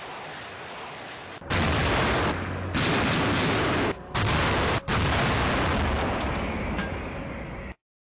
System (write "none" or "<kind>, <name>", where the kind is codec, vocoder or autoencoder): none